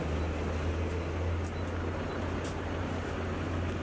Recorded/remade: recorded